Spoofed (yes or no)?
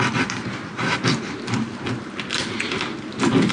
no